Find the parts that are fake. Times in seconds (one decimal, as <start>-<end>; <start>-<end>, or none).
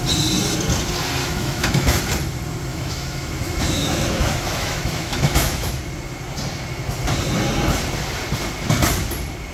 1.2-2.0; 2.7-5.8